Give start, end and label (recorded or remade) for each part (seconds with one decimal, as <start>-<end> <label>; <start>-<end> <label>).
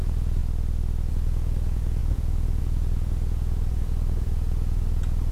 0.0-0.4 remade; 0.4-1.1 recorded; 1.1-5.3 remade